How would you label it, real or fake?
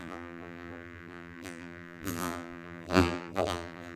fake